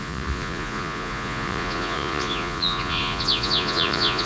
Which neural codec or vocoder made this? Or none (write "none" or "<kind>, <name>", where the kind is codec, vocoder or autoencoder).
vocoder, Vocos